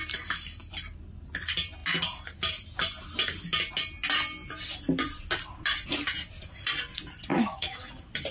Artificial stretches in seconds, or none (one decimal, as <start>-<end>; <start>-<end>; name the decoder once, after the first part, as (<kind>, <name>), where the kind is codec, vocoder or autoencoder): 7.3-7.8 (autoencoder, DAC-VAE)